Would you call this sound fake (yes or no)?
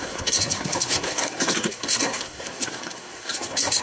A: yes